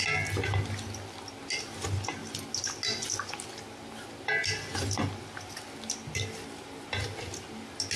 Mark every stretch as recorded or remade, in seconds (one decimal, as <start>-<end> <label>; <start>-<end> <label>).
0.0-8.0 recorded